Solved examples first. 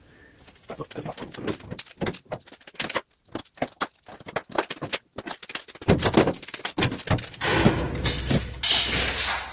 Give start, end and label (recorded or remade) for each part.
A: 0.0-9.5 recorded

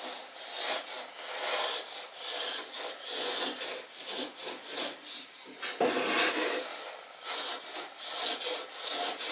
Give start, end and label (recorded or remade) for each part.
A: 0.0-9.3 recorded

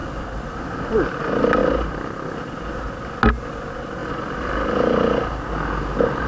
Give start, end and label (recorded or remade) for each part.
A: 0.0-4.0 recorded; 4.0-5.4 remade; 5.4-6.3 recorded

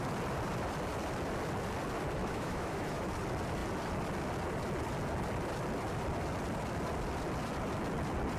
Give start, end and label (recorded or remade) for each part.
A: 0.0-2.2 recorded; 2.2-3.1 remade; 3.1-8.4 recorded

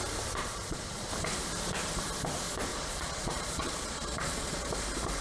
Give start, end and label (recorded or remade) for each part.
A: 0.0-0.4 recorded; 0.4-1.1 remade; 1.1-2.7 recorded; 2.7-4.7 remade; 4.7-5.2 recorded

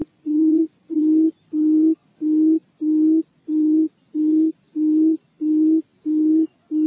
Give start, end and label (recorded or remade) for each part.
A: 0.0-1.0 remade; 1.0-6.9 recorded

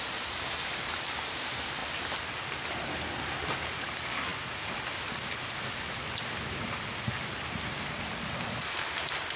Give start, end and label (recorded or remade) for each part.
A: 0.0-9.4 recorded

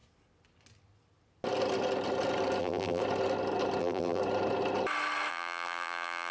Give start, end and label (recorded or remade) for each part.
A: 0.0-2.6 recorded; 2.6-3.0 remade; 3.0-3.8 recorded; 3.8-4.2 remade; 4.2-5.3 recorded; 5.3-6.3 remade